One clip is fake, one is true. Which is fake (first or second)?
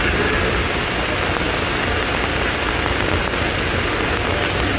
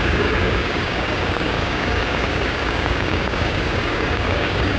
second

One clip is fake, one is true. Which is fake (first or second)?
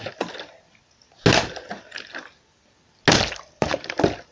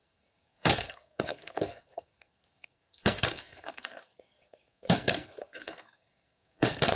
second